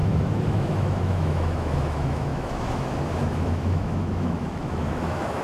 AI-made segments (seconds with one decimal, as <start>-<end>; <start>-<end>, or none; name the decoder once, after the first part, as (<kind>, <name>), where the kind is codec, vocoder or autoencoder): 0.0-5.4 (autoencoder, DAC-VAE)